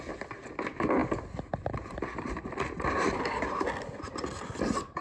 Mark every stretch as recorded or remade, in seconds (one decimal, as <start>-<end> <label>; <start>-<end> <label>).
0.0-5.0 recorded